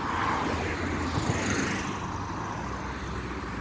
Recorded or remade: recorded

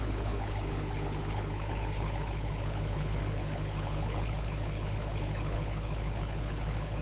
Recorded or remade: remade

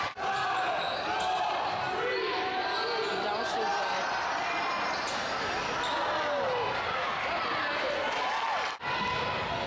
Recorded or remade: recorded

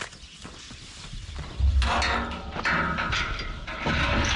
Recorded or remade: recorded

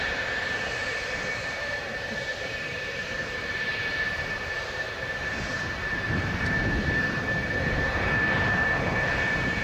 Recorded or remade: remade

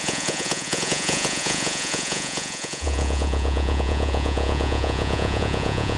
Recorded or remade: remade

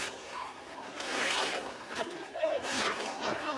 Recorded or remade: remade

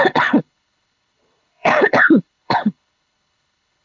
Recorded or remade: remade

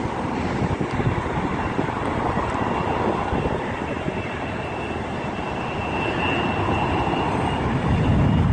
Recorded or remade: recorded